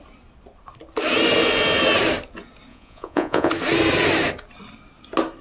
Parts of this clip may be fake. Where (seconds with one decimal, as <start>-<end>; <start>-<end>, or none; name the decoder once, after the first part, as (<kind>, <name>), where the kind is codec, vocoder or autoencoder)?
2.7-3.5 (vocoder, Vocos)